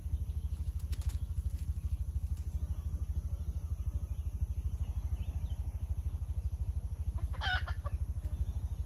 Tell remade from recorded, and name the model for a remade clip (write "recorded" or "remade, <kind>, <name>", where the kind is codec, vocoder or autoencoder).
recorded